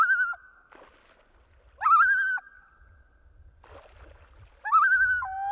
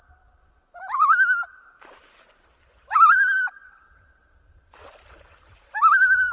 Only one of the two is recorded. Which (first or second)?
first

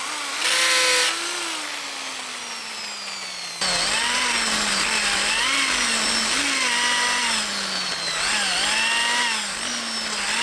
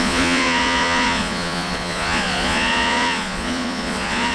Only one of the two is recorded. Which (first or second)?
first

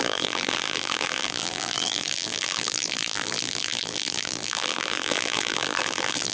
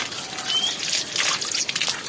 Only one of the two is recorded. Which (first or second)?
second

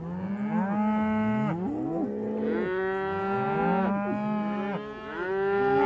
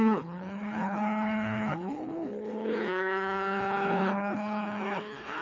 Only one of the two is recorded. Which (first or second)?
first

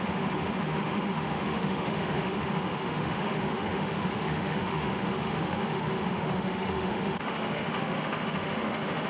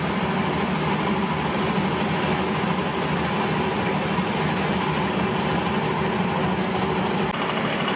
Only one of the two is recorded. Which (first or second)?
second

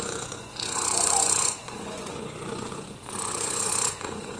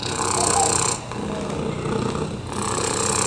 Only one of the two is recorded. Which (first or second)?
second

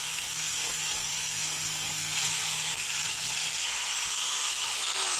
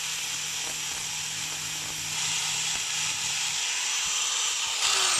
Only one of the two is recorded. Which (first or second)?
second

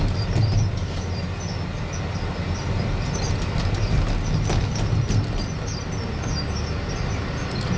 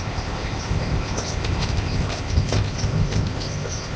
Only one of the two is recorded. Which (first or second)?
first